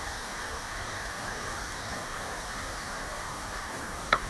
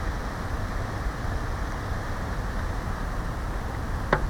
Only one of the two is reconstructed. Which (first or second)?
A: first